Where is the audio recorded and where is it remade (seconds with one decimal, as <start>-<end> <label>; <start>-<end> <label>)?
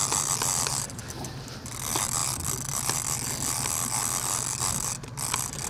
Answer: 0.0-5.7 recorded